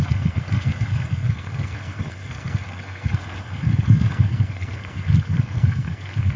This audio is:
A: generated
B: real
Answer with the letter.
A